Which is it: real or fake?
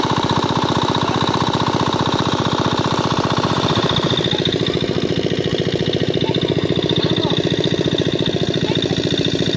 fake